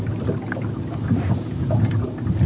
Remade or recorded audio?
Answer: recorded